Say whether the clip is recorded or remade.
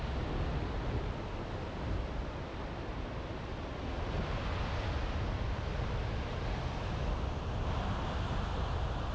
recorded